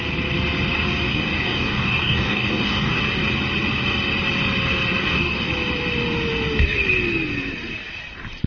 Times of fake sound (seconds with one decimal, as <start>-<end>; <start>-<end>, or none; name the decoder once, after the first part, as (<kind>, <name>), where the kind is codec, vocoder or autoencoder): 1.1-3.0 (codec, DAC); 5.0-5.5